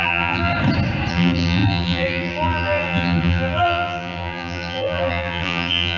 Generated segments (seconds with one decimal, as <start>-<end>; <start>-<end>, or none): 0.0-0.5; 1.1-6.0